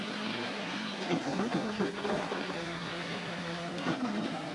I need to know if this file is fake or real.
fake